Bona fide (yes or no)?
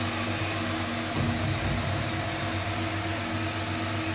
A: yes